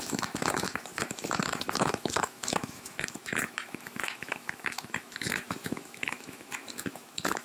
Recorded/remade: remade